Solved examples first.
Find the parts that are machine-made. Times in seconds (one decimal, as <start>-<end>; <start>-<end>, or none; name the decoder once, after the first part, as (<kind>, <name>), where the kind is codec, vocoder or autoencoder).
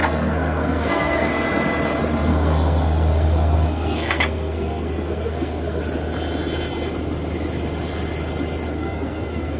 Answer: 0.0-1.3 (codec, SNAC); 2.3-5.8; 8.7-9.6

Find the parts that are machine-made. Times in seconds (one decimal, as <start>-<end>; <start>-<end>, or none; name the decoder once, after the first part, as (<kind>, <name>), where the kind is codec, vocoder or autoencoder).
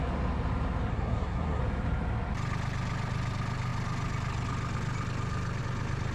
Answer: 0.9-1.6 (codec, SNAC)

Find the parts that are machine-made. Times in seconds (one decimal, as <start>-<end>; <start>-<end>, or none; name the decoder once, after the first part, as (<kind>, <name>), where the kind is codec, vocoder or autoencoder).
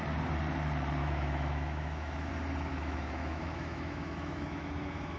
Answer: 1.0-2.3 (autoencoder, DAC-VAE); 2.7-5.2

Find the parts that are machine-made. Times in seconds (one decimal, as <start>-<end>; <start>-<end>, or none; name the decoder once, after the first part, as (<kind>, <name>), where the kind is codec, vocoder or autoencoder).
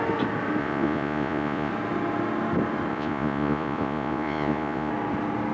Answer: 0.6-1.7 (vocoder, Vocos); 2.9-4.9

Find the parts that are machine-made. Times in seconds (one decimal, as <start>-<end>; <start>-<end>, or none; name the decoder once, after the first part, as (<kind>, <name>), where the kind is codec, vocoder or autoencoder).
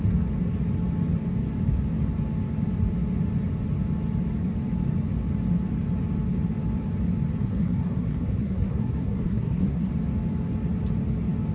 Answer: 7.4-9.9 (codec, SNAC)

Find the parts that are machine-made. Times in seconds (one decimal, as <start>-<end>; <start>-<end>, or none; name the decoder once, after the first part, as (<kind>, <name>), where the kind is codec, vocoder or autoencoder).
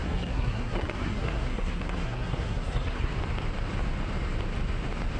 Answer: 0.0-3.1 (codec, SNAC)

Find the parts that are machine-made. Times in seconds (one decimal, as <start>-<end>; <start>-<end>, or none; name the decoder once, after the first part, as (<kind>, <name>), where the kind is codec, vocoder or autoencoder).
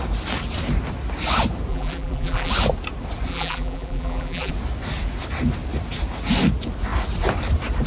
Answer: 1.7-2.5 (vocoder, BigVGAN v2); 3.3-4.5